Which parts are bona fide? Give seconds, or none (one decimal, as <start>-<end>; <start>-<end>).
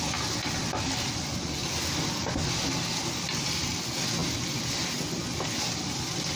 0.0-6.4